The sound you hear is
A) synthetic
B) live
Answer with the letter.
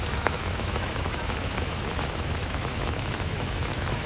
A